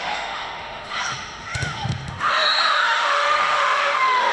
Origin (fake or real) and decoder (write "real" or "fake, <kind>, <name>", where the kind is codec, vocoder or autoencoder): fake, autoencoder, DAC-VAE